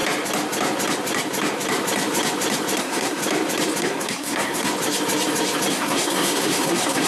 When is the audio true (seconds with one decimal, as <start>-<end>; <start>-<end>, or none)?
0.0-2.8; 3.2-3.8; 4.7-5.7